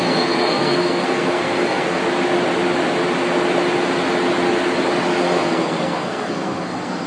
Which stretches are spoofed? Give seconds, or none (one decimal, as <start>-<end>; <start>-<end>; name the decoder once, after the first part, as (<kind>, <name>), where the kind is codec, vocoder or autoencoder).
0.0-2.0 (codec, SNAC); 5.2-7.1